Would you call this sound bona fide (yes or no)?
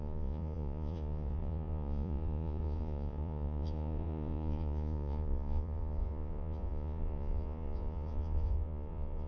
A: no